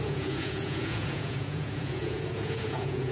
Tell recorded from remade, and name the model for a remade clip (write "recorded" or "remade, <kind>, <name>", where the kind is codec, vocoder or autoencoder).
remade, vocoder, Vocos